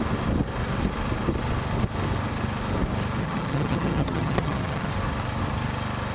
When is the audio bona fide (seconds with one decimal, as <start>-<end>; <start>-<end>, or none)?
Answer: 0.0-3.2; 4.9-6.1